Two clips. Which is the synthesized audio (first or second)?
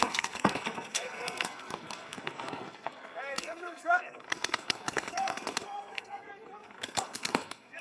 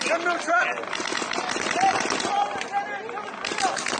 first